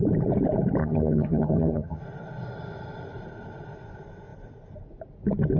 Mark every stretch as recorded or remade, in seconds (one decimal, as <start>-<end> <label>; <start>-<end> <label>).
0.0-0.8 recorded; 0.8-2.0 remade; 2.0-5.6 recorded